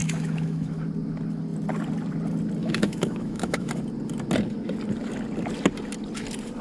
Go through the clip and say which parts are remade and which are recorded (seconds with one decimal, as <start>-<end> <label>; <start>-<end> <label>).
0.0-0.8 remade; 0.8-2.6 recorded; 2.6-3.7 remade; 3.7-6.6 recorded